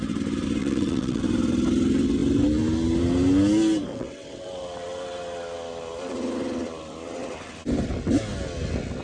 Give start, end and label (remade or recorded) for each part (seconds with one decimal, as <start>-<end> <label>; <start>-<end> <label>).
0.0-0.6 recorded; 0.6-1.2 remade; 1.2-3.9 recorded; 3.9-4.4 remade; 4.4-9.0 recorded